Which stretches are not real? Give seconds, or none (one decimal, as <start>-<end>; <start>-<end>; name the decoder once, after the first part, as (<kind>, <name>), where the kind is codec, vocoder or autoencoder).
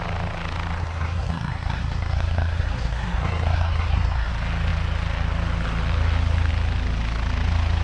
0.8-4.3 (codec, SNAC)